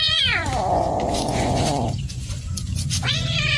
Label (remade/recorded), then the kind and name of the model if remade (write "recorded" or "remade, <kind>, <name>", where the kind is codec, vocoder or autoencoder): remade, vocoder, Vocos